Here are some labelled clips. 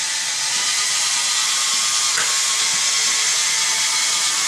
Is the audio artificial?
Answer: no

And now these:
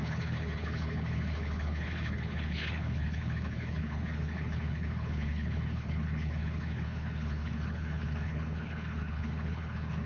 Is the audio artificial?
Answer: yes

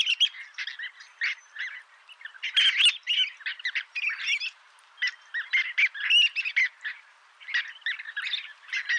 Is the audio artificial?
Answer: no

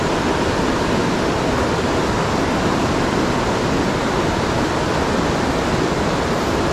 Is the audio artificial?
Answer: no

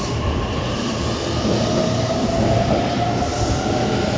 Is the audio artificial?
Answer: no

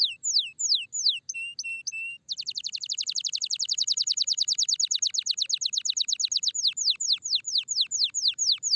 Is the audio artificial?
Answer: no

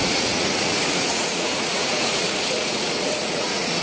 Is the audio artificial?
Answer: yes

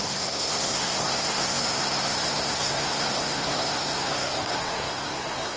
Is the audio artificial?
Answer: yes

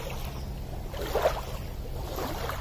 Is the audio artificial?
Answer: no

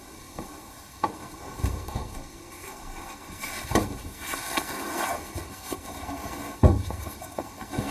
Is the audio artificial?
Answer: yes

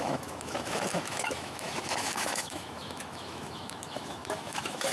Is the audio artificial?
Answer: yes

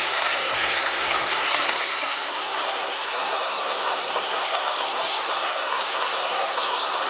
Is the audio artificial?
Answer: yes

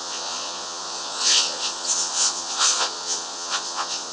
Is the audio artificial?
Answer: yes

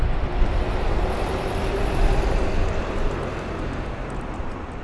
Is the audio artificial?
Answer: no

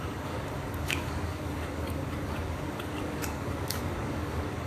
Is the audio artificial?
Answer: yes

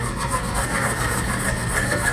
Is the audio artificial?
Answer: yes